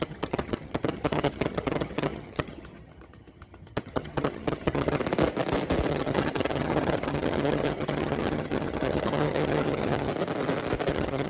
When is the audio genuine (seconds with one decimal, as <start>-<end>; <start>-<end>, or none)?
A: 5.0-5.9; 10.1-10.9

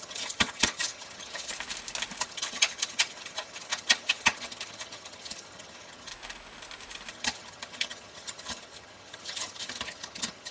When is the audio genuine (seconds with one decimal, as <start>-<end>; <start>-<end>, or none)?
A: 1.5-2.2; 6.1-7.1

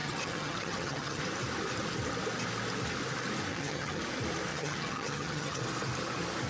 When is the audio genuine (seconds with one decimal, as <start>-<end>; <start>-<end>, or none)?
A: 1.2-3.5; 4.0-4.5; 5.6-6.5

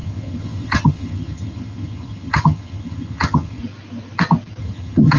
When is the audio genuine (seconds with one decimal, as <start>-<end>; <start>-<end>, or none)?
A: 3.6-4.6

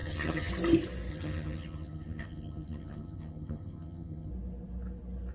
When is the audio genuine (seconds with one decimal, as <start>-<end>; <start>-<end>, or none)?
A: 0.5-1.1; 4.3-5.3